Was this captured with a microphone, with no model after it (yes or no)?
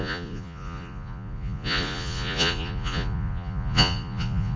no